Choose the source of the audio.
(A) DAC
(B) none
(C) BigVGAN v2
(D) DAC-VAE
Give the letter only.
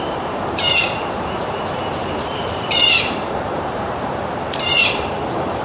C